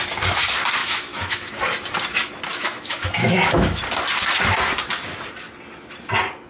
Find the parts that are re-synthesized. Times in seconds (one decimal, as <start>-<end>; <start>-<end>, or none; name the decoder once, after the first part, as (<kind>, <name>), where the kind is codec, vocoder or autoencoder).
0.8-1.6 (autoencoder, DAC-VAE); 2.5-3.8